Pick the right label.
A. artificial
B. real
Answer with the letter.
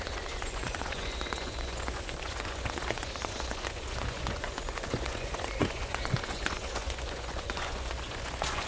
A